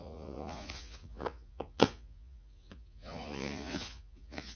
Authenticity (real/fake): fake